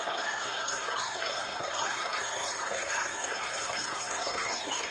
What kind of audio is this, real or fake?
fake